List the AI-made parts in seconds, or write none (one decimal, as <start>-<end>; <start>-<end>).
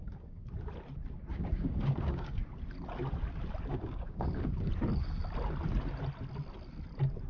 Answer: 0.0-0.4; 1.3-2.4; 3.7-4.7